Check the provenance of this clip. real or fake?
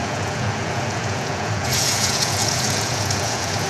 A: fake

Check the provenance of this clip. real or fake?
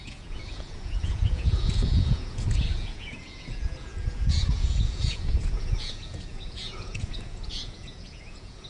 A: fake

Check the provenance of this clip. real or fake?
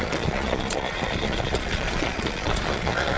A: fake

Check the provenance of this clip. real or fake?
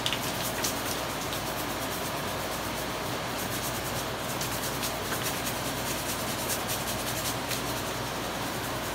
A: real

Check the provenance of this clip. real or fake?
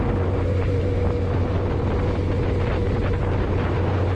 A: real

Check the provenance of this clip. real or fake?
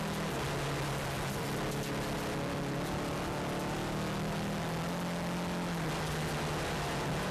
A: real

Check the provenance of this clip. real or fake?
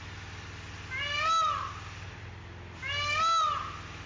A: real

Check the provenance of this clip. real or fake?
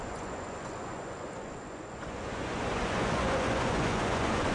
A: fake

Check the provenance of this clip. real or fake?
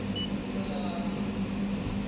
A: real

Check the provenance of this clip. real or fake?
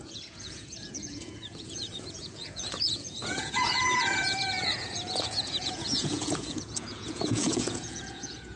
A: fake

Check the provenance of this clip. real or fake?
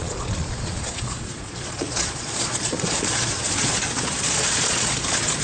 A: fake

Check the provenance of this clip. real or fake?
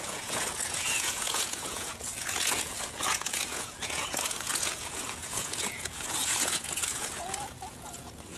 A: fake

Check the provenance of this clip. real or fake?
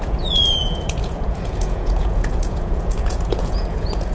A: fake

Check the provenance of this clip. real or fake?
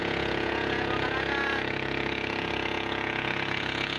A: fake